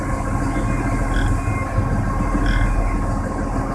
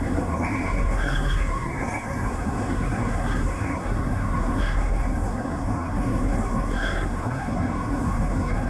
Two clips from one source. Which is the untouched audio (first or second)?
first